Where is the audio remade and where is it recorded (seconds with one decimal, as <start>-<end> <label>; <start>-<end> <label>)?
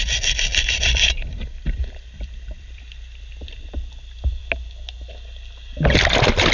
0.0-0.5 recorded; 0.5-3.7 remade; 3.7-6.5 recorded